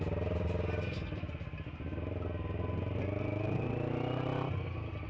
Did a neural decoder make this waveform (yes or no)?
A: no